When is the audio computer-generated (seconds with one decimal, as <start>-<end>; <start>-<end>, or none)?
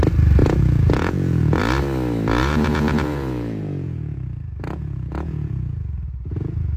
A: 0.4-1.6; 2.4-6.8